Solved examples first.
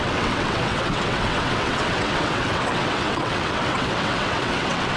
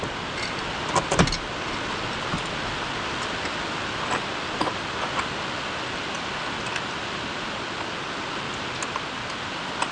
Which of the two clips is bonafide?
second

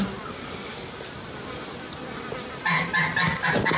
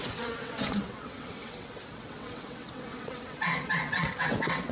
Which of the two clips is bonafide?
first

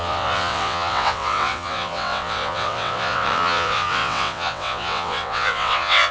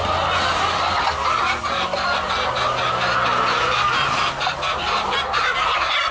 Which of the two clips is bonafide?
second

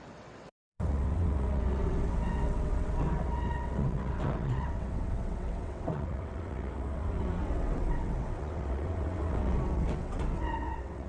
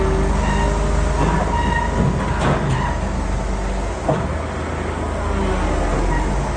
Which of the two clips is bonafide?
second